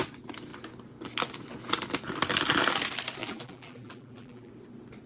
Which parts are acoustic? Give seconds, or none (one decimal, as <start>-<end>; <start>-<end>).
0.0-3.2; 4.5-5.1